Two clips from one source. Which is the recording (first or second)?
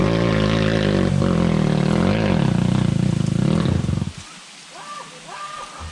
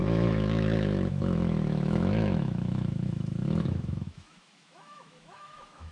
first